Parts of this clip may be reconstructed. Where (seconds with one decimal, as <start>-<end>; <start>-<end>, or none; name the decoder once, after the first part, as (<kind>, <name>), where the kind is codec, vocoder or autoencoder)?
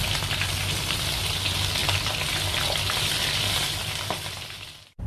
none